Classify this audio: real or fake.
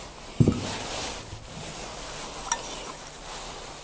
real